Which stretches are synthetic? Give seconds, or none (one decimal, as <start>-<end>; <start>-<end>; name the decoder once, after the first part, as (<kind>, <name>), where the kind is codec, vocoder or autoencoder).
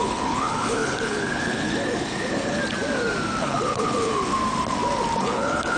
0.0-2.6 (codec, HILCodec); 3.4-4.3; 5.2-5.8